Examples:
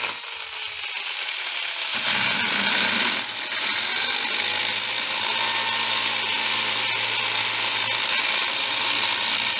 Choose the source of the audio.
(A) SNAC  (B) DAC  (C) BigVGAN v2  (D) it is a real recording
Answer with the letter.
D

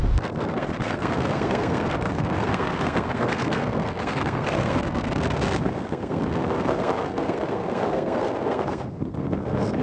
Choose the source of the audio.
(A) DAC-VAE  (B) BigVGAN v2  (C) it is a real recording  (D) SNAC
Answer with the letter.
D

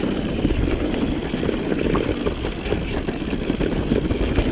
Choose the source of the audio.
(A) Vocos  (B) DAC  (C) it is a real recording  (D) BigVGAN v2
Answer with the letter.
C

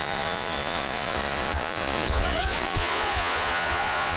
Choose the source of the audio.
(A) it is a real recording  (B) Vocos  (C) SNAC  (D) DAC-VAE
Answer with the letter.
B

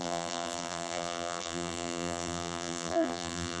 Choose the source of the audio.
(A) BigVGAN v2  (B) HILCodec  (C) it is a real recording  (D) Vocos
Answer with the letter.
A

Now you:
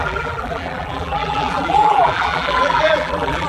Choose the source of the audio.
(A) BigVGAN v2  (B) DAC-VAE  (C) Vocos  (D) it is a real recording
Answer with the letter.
A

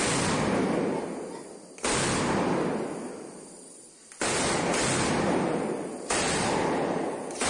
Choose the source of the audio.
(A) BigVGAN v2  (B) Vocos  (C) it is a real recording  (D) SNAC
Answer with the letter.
C